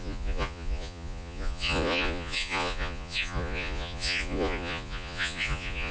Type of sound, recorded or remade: remade